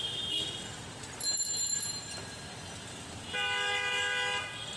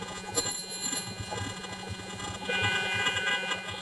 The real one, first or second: first